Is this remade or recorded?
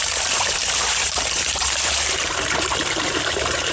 remade